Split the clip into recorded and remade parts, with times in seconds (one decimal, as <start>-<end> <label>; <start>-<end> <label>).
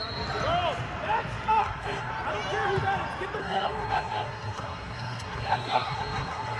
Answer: 0.0-1.6 recorded; 1.6-2.1 remade; 2.1-3.4 recorded; 3.4-6.6 remade